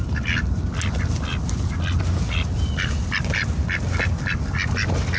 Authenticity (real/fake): real